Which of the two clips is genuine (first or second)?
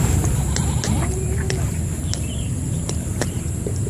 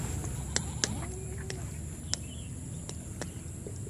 second